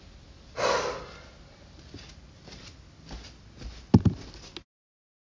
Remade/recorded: recorded